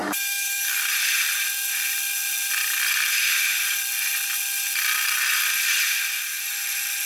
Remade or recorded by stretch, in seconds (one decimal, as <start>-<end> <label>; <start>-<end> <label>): 0.0-0.8 remade; 0.8-7.1 recorded